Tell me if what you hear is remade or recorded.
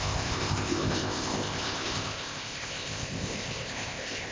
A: remade